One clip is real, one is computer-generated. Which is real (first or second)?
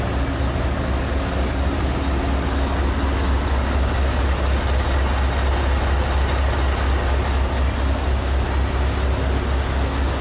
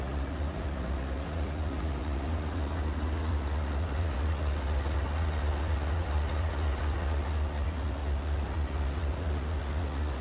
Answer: first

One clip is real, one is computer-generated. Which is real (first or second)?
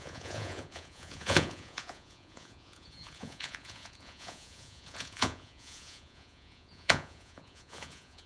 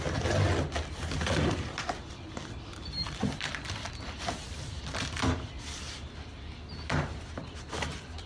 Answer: second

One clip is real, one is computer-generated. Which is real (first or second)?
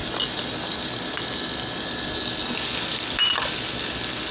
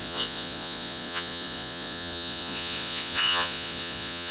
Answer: first